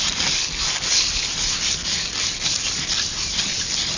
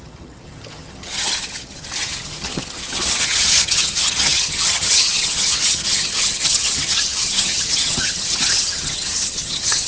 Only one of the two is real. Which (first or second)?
first